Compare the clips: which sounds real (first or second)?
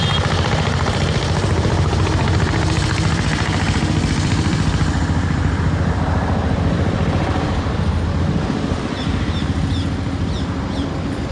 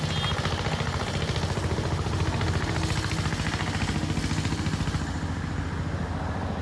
second